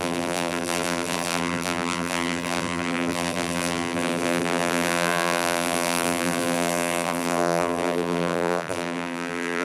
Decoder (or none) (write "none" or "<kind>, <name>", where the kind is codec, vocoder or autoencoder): vocoder, BigVGAN v2